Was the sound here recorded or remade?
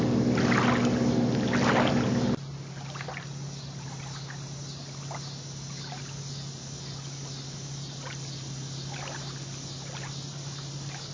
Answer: recorded